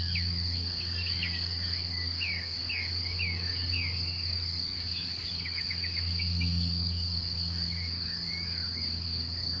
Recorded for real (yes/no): no